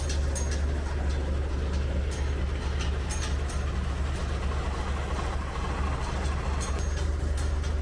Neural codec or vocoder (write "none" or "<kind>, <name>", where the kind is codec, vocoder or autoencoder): none